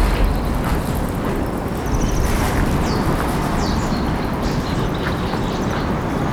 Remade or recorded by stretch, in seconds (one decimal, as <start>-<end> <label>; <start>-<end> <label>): 0.0-6.3 recorded